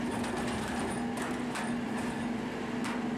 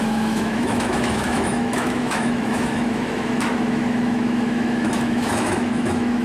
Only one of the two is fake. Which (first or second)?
second